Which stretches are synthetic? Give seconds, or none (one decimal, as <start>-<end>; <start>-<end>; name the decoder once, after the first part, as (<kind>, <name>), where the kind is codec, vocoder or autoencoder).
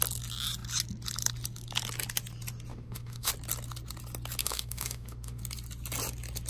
2.7-3.3 (autoencoder, DAC-VAE); 4.4-5.4